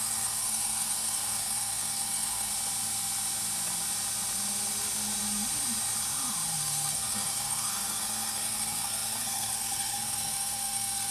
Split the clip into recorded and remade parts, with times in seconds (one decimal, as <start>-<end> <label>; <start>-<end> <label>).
0.0-2.5 remade; 2.5-6.6 recorded; 6.6-11.1 remade